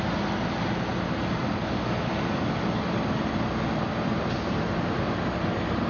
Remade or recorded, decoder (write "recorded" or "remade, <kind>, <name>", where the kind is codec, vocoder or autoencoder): recorded